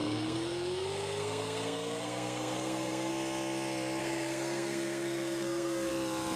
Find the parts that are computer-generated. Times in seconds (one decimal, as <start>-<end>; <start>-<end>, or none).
0.0-3.1; 4.0-5.9